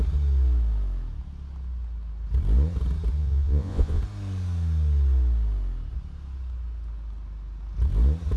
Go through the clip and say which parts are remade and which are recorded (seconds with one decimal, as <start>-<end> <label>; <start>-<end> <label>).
0.0-3.2 recorded; 3.2-4.0 remade; 4.0-8.4 recorded